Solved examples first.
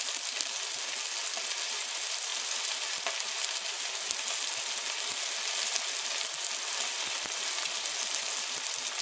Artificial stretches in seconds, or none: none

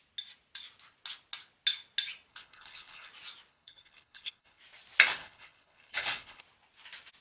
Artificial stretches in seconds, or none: 2.3-3.1 (codec, HILCodec); 3.5-4.6; 5.2-6.4